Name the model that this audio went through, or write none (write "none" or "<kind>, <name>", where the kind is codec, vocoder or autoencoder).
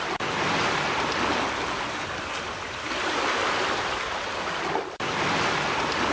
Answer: none